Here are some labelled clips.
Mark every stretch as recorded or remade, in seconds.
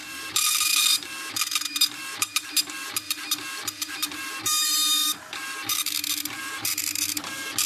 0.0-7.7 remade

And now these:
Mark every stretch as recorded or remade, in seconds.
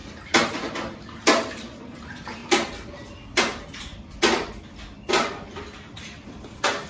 0.0-1.0 recorded; 1.0-2.4 remade; 2.4-6.0 recorded; 6.0-6.9 remade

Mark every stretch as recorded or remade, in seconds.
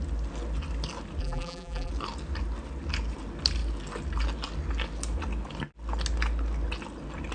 0.0-1.2 recorded; 1.2-1.9 remade; 1.9-7.3 recorded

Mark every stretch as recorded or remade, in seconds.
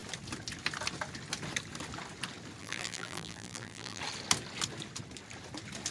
0.0-2.6 recorded; 2.6-4.0 remade; 4.0-5.9 recorded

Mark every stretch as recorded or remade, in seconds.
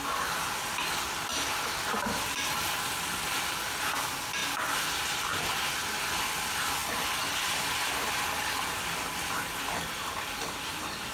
0.0-4.4 recorded; 4.4-5.7 remade; 5.7-11.1 recorded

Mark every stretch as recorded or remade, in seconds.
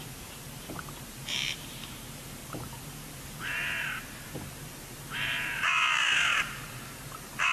0.0-7.5 remade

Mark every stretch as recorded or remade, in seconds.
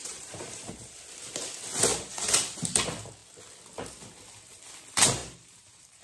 0.0-1.0 remade; 1.0-1.9 recorded; 1.9-2.8 remade; 2.8-5.2 recorded; 5.2-6.0 remade